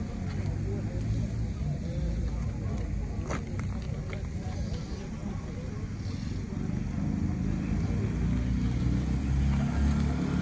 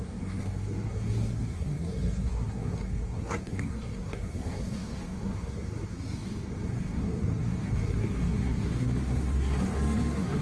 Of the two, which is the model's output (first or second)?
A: second